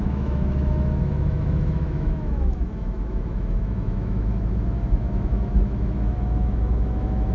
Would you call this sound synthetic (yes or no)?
yes